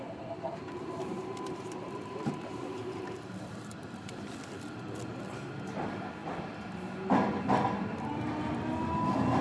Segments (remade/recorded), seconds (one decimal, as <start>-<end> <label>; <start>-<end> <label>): 0.0-6.2 remade; 6.2-7.9 recorded; 7.9-9.4 remade